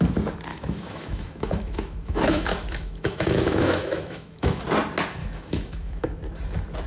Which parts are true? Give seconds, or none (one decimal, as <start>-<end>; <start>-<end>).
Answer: 0.0-0.5; 4.6-5.2; 6.2-6.9